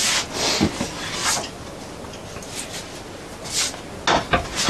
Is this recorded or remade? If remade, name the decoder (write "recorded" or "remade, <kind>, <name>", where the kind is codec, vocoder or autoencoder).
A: recorded